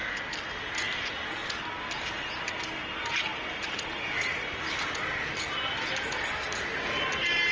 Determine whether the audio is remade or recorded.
recorded